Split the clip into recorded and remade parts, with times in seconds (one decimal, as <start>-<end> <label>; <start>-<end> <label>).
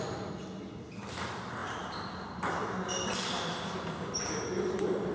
0.0-5.1 recorded